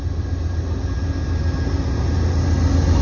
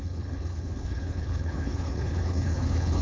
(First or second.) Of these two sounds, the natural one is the first